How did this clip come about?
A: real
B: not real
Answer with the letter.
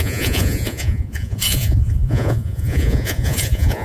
B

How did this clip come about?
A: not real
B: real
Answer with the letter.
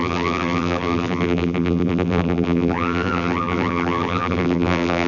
A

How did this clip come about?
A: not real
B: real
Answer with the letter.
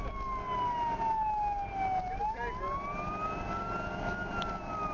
B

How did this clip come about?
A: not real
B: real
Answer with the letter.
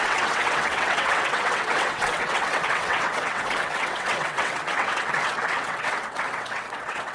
A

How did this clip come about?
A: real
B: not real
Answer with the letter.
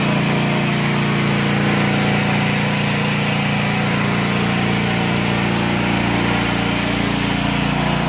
A